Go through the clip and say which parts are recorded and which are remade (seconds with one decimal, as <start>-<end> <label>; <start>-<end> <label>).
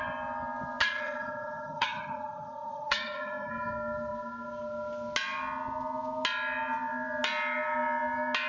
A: 0.0-0.8 recorded; 0.8-3.5 remade; 3.5-8.5 recorded